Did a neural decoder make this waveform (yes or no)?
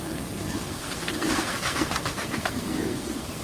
yes